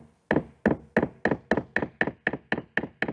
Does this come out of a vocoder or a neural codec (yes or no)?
no